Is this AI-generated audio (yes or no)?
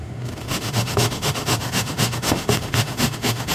yes